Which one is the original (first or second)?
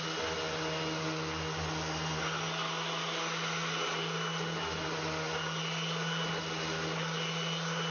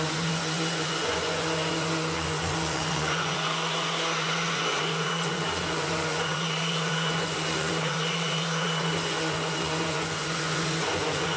first